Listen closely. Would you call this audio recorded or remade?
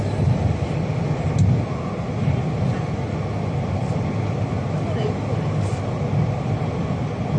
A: recorded